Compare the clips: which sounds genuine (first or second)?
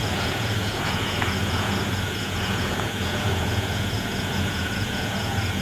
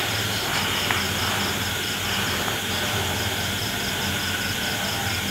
second